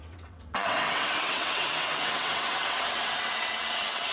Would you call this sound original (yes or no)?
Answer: no